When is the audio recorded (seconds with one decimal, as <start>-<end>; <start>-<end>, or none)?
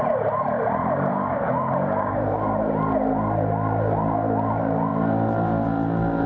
0.0-1.1; 2.1-6.3